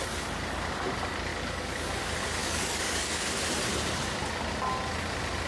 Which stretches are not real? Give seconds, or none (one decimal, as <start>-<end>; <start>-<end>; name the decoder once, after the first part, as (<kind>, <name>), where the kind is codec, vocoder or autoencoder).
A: 1.3-2.0 (codec, DAC); 2.4-3.3